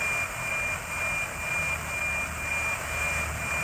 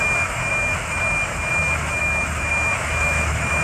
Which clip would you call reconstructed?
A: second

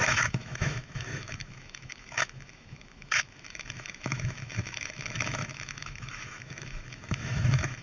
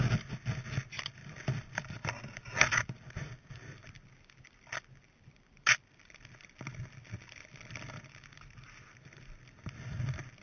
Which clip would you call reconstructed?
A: first